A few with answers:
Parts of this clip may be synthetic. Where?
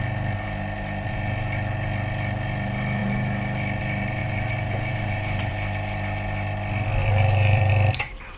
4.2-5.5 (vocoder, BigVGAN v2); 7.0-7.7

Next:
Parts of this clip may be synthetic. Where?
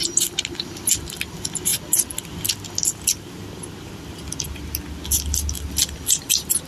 none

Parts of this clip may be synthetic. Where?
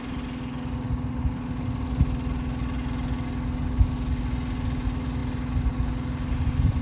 none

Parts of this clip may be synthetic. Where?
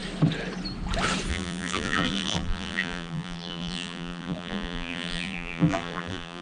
1.3-6.4 (vocoder, BigVGAN v2)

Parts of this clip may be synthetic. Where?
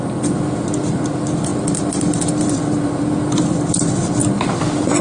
1.5-4.5 (vocoder, BigVGAN v2)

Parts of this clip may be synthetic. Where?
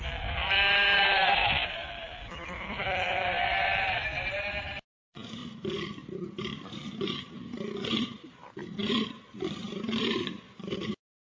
0.0-5.4 (vocoder, BigVGAN v2); 6.4-11.2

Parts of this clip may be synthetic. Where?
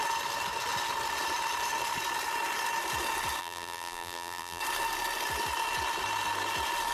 3.4-4.6 (vocoder, BigVGAN v2)